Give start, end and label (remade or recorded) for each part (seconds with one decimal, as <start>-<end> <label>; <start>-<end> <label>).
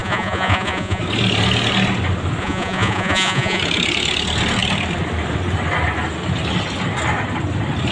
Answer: 0.0-1.0 remade; 1.0-2.4 recorded; 2.4-3.6 remade; 3.6-7.9 recorded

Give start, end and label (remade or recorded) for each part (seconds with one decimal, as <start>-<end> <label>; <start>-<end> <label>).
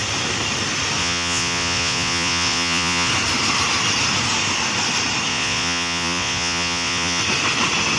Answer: 0.0-1.0 recorded; 1.0-3.1 remade; 3.1-5.3 recorded; 5.3-7.2 remade; 7.2-8.0 recorded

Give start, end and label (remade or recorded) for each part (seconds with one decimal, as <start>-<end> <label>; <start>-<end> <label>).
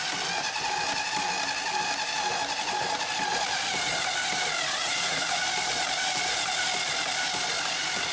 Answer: 0.0-4.8 recorded; 4.8-5.4 remade; 5.4-8.1 recorded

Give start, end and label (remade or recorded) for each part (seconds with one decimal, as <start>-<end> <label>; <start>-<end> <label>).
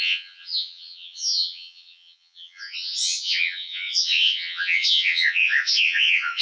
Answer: 0.0-6.4 remade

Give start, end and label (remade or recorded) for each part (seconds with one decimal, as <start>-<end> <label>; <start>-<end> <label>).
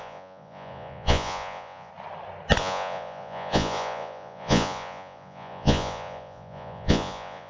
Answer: 0.0-1.9 remade; 1.9-2.6 recorded; 2.6-7.5 remade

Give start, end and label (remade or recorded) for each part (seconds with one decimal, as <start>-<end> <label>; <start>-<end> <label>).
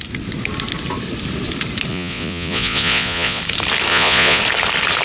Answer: 0.0-1.9 recorded; 1.9-3.4 remade; 3.4-3.9 recorded; 3.9-4.4 remade; 4.4-5.0 recorded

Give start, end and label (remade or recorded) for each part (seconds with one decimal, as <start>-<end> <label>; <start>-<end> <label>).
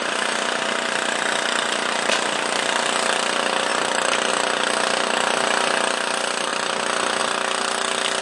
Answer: 0.0-8.2 recorded